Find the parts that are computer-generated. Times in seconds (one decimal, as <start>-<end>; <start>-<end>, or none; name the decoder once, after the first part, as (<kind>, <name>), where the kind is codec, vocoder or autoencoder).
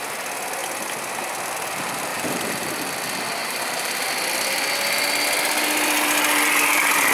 2.1-2.7 (vocoder, BigVGAN v2); 3.4-4.1